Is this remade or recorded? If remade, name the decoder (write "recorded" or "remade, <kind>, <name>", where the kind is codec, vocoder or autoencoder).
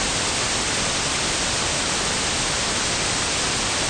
recorded